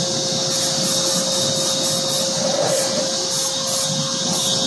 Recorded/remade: recorded